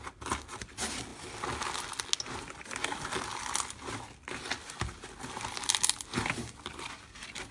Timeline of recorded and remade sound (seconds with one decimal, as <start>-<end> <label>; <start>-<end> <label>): 0.0-7.5 recorded